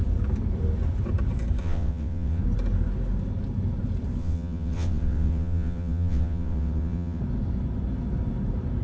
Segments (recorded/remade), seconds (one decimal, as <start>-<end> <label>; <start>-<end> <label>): 0.0-1.6 recorded; 1.6-2.4 remade; 2.4-4.2 recorded; 4.2-7.2 remade; 7.2-8.8 recorded